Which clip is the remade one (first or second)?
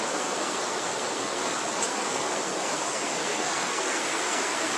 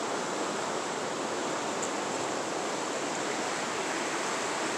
first